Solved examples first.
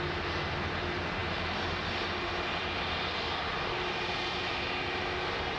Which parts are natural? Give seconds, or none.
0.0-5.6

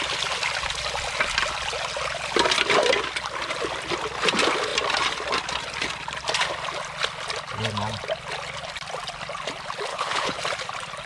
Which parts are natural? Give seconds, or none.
0.0-9.9; 10.4-11.1